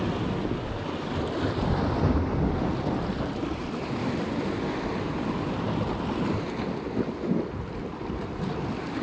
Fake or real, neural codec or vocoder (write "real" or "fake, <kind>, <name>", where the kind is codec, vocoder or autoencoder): real